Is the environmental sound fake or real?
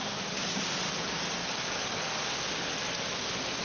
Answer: real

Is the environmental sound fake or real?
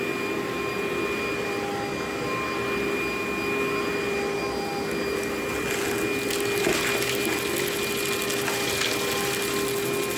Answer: real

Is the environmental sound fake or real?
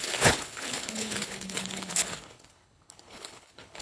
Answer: fake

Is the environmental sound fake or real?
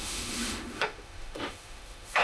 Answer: fake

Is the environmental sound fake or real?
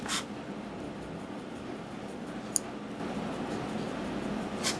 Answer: real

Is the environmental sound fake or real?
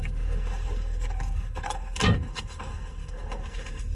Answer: fake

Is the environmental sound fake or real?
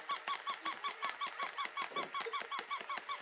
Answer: real